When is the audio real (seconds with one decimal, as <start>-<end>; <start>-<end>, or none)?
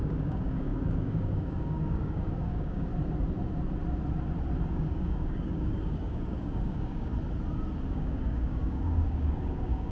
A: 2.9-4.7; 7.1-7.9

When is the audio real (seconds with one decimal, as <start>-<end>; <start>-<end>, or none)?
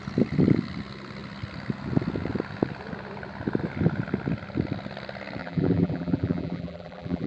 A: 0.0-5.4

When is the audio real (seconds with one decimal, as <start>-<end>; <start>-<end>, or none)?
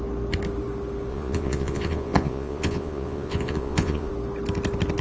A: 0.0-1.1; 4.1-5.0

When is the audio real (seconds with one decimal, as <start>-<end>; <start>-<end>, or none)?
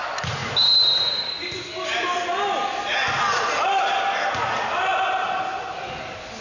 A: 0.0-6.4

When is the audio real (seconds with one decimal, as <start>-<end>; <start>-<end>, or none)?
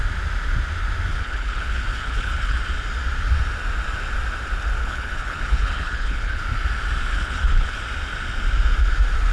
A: 0.0-1.1; 2.6-4.8; 6.4-7.1; 7.8-9.3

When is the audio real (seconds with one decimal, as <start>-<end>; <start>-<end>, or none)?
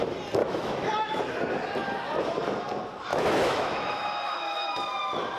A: 0.0-0.4; 1.2-3.1; 4.4-5.4